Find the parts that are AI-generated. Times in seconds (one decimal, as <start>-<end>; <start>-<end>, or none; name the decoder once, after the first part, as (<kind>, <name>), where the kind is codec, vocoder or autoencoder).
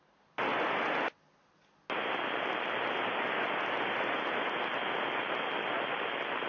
none